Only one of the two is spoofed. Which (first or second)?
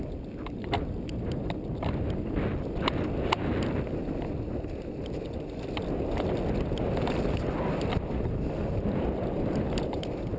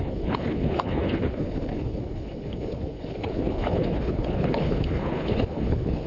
second